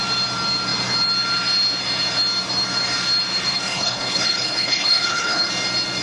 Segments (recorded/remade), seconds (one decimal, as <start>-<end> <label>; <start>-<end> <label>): 0.0-3.5 recorded; 3.5-5.5 remade; 5.5-6.0 recorded